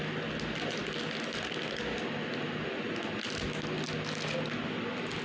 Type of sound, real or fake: real